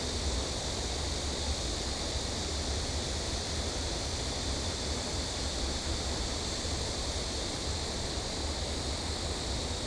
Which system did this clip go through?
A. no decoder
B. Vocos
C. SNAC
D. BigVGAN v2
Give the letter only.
A